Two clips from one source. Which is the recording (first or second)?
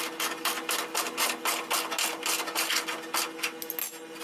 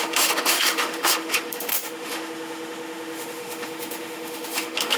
first